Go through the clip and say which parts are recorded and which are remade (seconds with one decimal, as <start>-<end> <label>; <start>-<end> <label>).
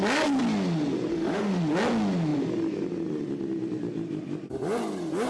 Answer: 0.0-1.1 recorded; 1.1-1.6 remade; 1.6-5.3 recorded